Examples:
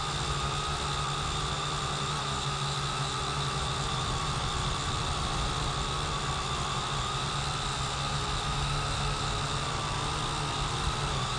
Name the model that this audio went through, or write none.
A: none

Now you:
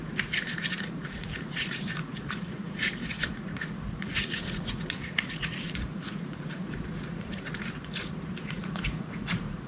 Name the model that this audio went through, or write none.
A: vocoder, Vocos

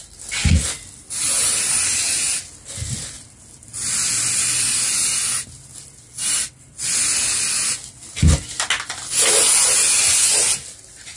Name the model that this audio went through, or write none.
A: none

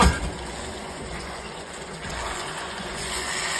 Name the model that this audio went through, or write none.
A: vocoder, Vocos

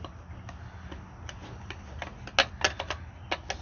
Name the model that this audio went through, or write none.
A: none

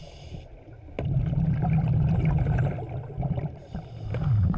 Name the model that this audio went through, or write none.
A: none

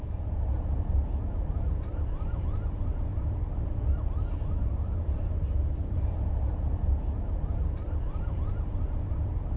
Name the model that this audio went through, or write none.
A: none